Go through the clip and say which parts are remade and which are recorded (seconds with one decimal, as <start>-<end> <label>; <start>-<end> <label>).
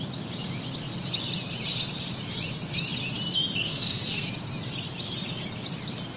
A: 0.0-3.6 recorded; 3.6-4.3 remade; 4.3-6.2 recorded